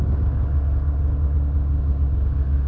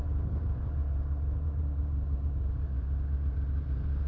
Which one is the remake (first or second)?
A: second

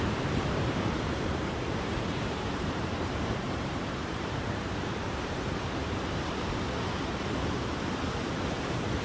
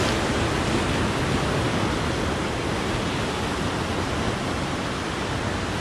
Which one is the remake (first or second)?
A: first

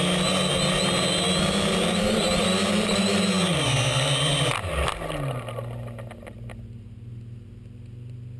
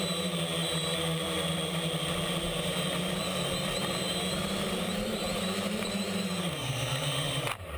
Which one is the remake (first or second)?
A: second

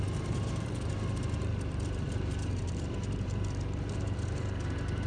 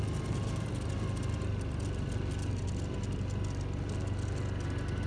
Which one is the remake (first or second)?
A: first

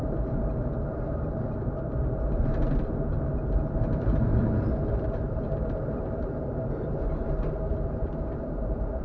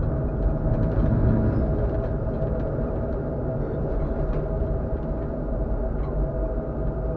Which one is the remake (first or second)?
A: first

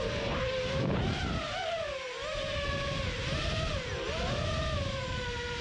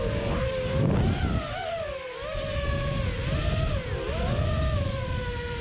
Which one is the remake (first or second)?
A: first